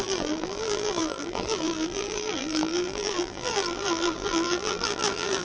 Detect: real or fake fake